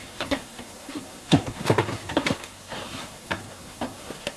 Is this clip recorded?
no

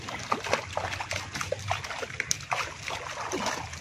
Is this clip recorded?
yes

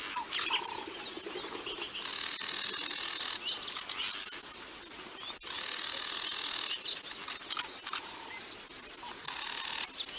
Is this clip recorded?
yes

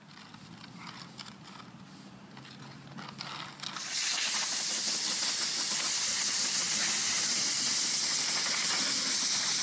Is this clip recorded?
yes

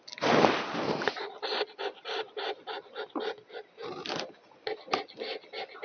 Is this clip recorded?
yes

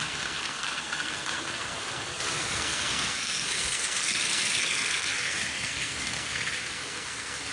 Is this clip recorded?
no